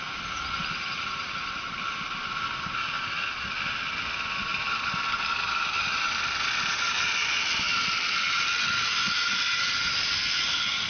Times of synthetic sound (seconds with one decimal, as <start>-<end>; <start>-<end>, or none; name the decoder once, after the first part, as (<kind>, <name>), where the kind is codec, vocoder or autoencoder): none